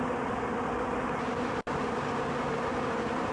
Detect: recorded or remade recorded